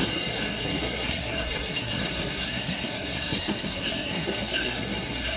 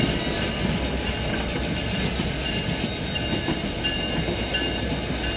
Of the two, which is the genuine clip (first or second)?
second